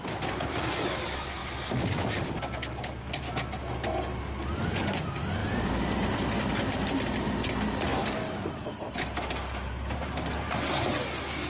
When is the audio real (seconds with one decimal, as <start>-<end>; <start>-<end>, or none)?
0.0-1.4; 2.3-5.4; 6.5-7.9; 8.9-11.5